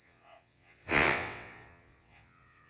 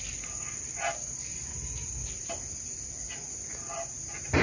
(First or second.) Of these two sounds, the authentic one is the second